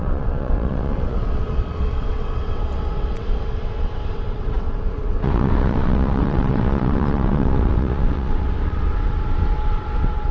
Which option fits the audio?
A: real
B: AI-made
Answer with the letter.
B